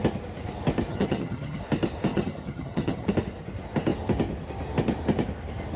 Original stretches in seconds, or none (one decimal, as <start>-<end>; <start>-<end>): 0.0-0.9; 1.6-2.1; 3.1-5.8